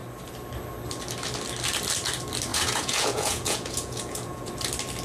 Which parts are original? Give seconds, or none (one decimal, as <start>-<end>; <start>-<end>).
0.0-2.5; 4.5-5.0